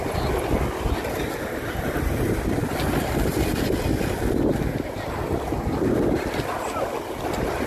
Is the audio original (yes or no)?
yes